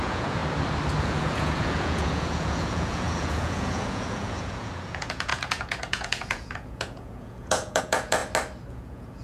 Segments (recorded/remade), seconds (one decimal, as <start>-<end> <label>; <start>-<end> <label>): 0.0-0.4 remade; 0.4-1.0 recorded; 1.0-8.2 remade; 8.2-8.7 recorded; 8.7-9.2 remade